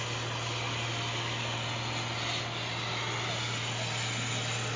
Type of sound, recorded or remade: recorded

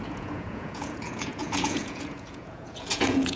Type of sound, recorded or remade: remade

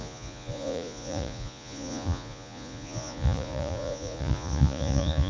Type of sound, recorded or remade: remade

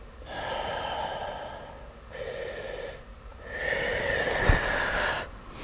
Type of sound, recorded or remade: remade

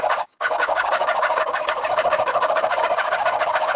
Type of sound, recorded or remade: remade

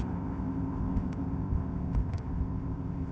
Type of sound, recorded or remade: remade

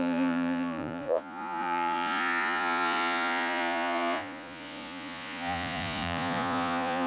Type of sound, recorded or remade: remade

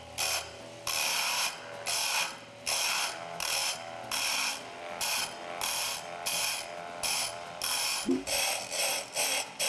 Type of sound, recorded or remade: recorded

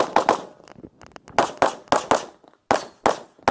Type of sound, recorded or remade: recorded